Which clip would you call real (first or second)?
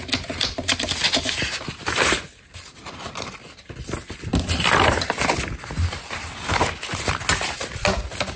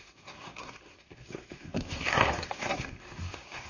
first